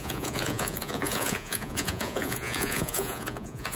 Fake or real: fake